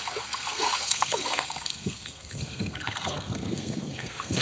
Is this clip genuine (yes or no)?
no